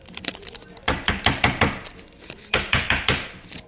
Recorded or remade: remade